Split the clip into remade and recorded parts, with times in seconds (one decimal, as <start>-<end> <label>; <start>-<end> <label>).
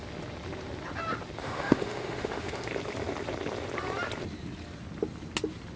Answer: 0.0-1.4 recorded; 1.4-2.7 remade; 2.7-5.8 recorded